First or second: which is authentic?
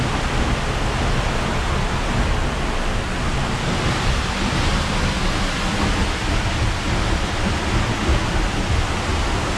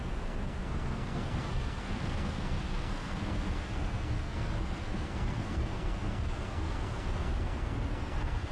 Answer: first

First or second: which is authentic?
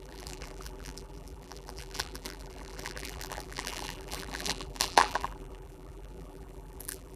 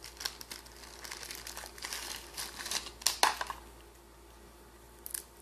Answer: second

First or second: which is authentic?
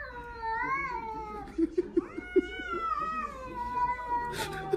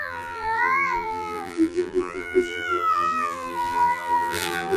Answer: first